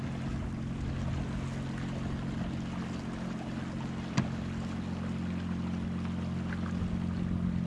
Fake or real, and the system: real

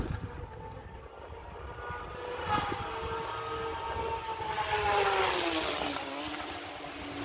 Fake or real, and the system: real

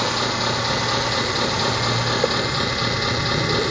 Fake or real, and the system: real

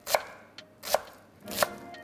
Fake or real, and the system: real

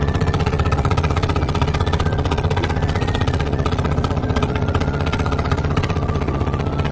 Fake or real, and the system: fake, vocoder, Vocos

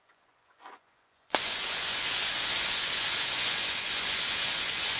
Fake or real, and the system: fake, vocoder, Vocos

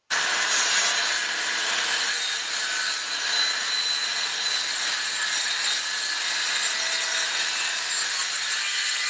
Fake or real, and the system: real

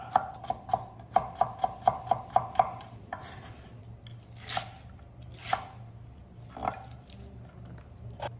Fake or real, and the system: real